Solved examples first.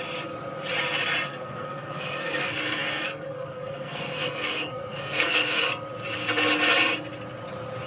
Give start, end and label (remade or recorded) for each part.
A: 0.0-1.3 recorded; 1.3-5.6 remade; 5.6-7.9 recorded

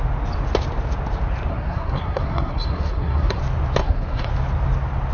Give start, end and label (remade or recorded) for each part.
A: 0.0-1.5 recorded; 1.5-3.4 remade; 3.4-3.8 recorded; 3.8-4.3 remade; 4.3-5.1 recorded

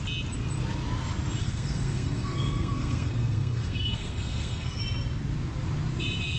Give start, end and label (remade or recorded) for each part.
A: 0.0-1.4 recorded; 1.4-4.8 remade; 4.8-6.4 recorded

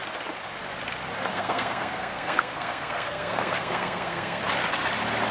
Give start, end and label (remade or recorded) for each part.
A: 0.0-1.3 recorded; 1.3-4.4 remade; 4.4-5.3 recorded

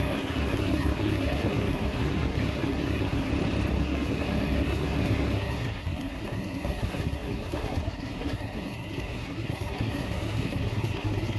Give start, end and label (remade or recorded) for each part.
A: 0.0-3.3 remade; 3.3-3.8 recorded; 3.8-11.4 remade

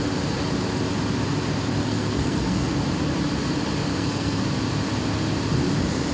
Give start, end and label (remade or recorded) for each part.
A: 0.0-1.8 recorded; 1.8-2.7 remade; 2.7-3.9 recorded; 3.9-4.4 remade; 4.4-6.1 recorded